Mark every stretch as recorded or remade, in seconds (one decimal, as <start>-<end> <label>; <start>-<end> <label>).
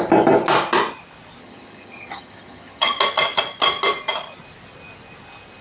0.0-1.4 recorded; 1.4-3.0 remade; 3.0-5.6 recorded